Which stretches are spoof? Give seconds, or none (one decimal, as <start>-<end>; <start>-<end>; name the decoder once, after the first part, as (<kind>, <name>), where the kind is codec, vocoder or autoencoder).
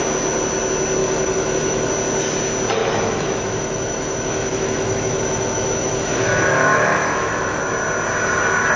1.0-1.9 (autoencoder, DAC-VAE); 2.8-7.6